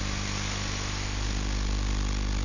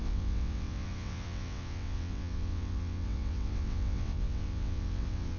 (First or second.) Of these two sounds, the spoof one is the second